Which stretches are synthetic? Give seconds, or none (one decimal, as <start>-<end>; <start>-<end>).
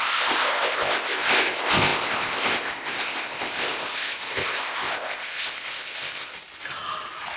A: 0.0-6.3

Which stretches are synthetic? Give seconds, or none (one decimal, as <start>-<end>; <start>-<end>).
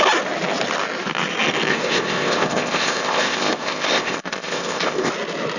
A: 1.7-5.1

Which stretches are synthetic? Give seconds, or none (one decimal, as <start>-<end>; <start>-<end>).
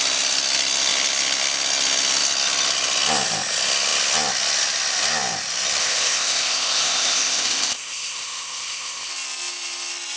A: 5.8-9.1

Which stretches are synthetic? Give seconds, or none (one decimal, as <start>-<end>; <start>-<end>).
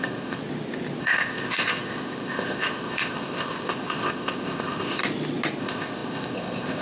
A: 0.0-0.4; 1.0-5.0; 5.6-6.8